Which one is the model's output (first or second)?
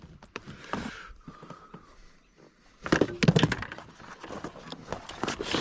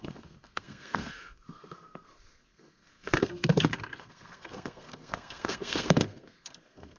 second